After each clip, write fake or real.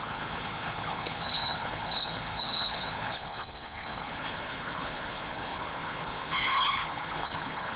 fake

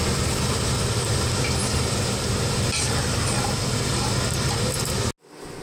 real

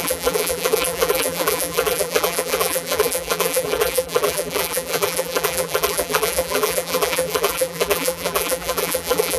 fake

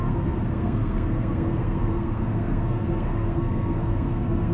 fake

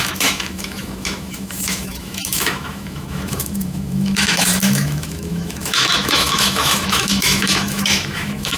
fake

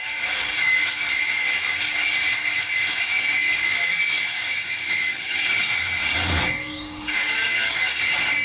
fake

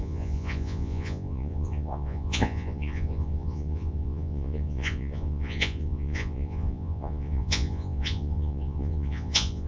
fake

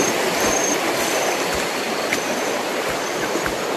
real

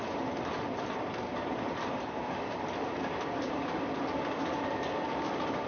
real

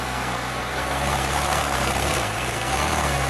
fake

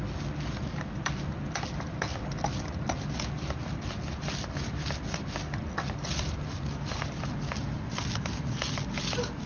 real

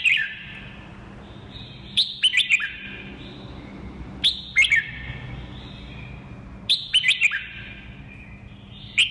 real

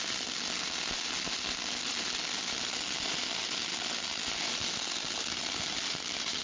real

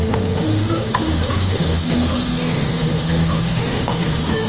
fake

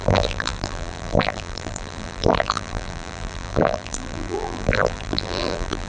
fake